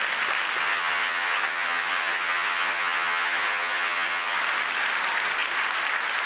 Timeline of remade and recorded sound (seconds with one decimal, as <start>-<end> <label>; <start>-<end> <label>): 0.0-0.6 recorded; 0.6-4.4 remade; 4.4-6.3 recorded